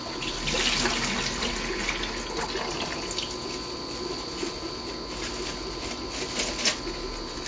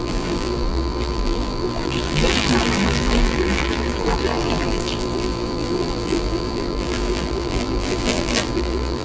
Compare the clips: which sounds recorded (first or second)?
first